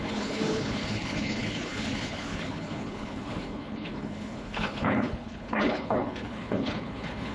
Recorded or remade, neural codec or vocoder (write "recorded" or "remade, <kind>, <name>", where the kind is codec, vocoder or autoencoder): remade, codec, HILCodec